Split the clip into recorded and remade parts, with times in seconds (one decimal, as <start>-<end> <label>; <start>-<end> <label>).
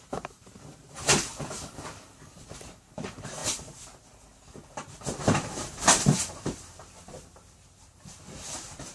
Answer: 0.0-1.3 remade; 1.3-2.3 recorded; 2.3-8.9 remade